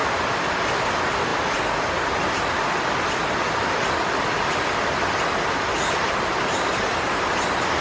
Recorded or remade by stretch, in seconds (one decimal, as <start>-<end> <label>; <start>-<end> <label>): 0.0-7.8 recorded

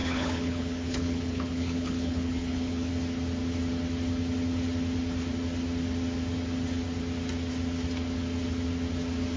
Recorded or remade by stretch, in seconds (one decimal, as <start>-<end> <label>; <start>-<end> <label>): 0.0-2.9 remade; 2.9-9.4 recorded

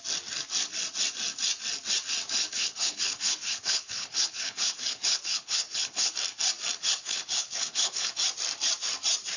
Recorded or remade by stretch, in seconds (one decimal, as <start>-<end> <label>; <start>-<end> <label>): 0.0-2.4 recorded; 2.4-6.1 remade; 6.1-6.8 recorded; 6.8-8.1 remade; 8.1-9.4 recorded

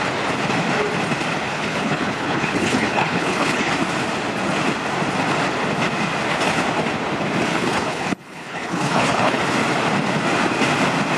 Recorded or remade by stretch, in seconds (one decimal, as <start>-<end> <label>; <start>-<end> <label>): 0.0-1.5 recorded; 1.5-3.7 remade; 3.7-7.5 recorded; 7.5-9.4 remade; 9.4-11.2 recorded

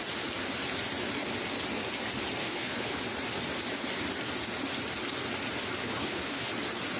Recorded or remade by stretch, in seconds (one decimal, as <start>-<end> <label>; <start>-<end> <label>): 0.0-2.4 recorded; 2.4-3.0 remade; 3.0-5.8 recorded; 5.8-6.5 remade; 6.5-7.0 recorded

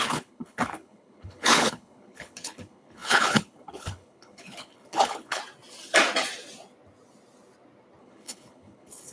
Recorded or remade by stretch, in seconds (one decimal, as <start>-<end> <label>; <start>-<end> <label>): 0.0-5.4 remade; 5.4-8.0 recorded; 8.0-9.1 remade

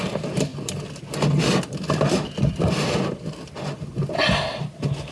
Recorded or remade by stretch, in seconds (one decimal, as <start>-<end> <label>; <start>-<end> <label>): 0.0-5.1 recorded

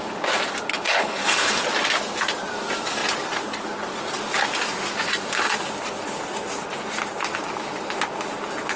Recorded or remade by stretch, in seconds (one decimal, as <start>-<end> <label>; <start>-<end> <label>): 0.0-0.7 recorded; 0.7-1.6 remade; 1.6-8.8 recorded